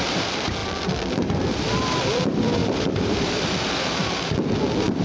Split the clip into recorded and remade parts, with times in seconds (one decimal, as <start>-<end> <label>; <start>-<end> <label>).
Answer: 0.0-5.0 remade